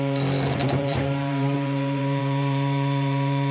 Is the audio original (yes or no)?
no